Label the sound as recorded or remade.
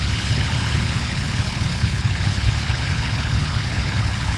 remade